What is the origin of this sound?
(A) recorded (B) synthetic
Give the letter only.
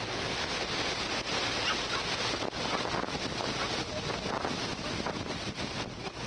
A